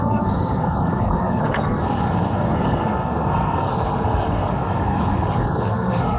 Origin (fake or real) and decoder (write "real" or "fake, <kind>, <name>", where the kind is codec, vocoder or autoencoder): fake, codec, SNAC